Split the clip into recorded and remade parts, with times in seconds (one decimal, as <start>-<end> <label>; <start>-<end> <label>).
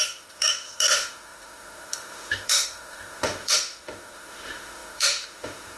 0.0-5.8 remade